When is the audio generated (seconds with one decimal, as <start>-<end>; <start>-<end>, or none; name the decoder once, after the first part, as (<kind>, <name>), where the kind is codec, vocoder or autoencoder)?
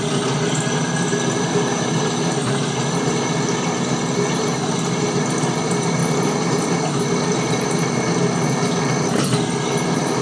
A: none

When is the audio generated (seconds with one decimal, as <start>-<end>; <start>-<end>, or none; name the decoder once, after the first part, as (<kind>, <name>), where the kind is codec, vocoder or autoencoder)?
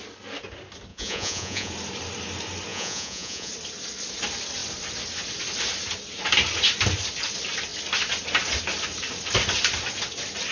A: 0.9-1.7 (vocoder, Vocos); 2.7-3.5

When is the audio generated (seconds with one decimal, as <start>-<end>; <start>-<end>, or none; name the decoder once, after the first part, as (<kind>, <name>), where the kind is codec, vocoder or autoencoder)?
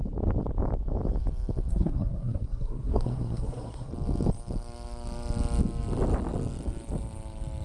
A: 1.7-3.9 (codec, SNAC)